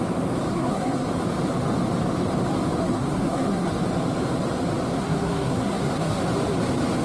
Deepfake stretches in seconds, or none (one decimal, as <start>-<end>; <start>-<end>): 0.5-1.1; 2.8-3.7; 5.0-6.2

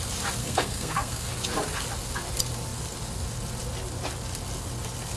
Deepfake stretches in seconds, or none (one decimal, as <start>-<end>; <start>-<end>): 0.4-1.3

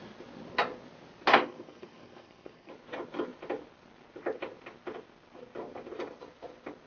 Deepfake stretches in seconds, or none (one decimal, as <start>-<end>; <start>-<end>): 1.3-2.7